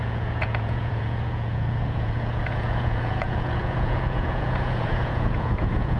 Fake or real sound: fake